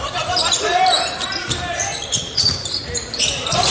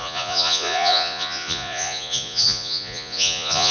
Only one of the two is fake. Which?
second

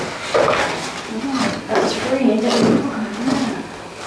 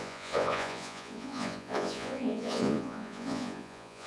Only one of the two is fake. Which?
second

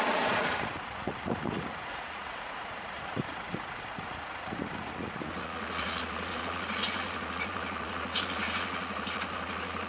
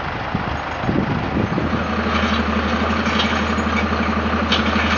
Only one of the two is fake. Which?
first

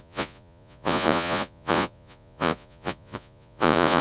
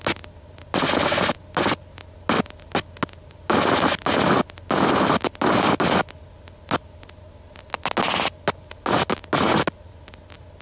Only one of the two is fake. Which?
first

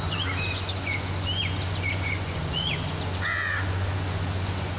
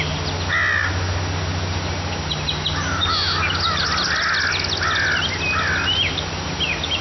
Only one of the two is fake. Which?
first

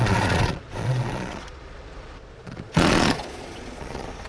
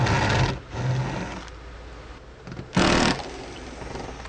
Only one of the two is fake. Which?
first